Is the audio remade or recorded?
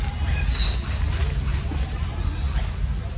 recorded